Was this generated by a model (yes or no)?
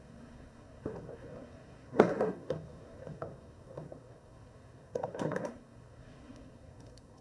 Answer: yes